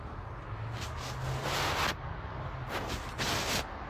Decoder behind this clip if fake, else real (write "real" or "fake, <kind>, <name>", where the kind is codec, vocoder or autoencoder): real